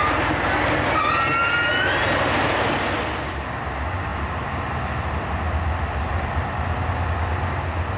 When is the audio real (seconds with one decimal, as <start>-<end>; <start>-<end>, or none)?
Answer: 0.0-4.1; 6.5-8.0